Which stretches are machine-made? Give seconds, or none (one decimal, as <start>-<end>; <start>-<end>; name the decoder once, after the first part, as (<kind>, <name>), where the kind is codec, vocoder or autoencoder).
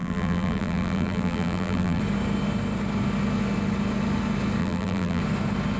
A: 0.0-2.0 (vocoder, BigVGAN v2); 4.6-5.2